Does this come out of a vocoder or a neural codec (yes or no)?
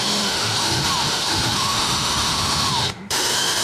yes